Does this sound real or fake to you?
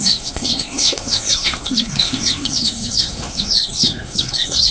fake